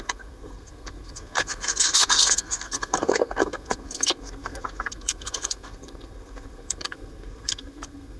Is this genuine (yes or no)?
no